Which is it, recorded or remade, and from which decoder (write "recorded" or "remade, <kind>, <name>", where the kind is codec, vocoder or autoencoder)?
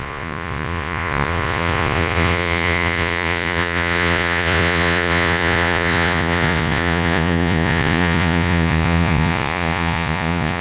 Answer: remade, vocoder, Vocos